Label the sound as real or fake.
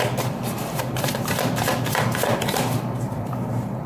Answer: fake